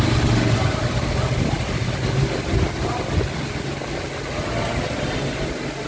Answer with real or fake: real